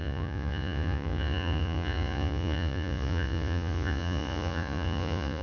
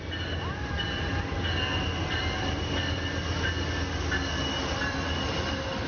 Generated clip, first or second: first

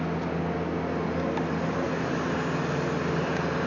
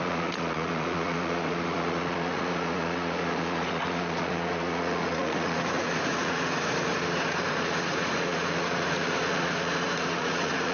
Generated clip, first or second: second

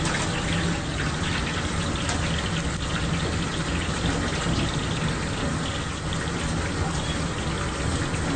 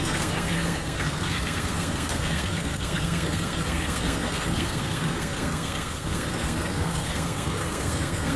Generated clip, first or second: second